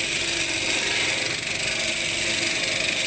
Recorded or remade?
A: recorded